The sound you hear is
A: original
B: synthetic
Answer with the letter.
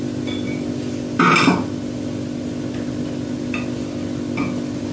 A